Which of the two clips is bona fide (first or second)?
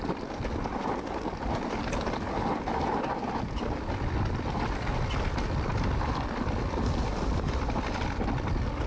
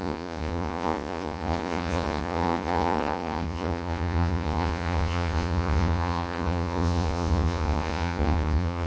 first